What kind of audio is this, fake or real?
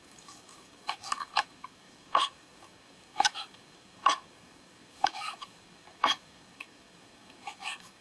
fake